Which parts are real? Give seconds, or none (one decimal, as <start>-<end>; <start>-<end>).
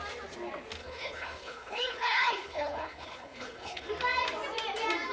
0.0-0.8; 3.9-5.1